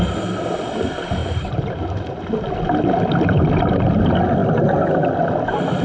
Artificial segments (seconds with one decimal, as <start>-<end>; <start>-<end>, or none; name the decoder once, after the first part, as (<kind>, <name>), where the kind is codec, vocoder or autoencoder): 1.2-2.2 (vocoder, BigVGAN v2)